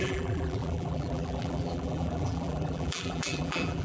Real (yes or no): no